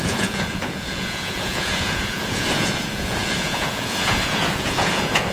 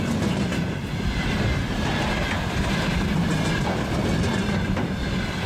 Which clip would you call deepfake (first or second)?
first